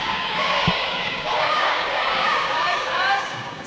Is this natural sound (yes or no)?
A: no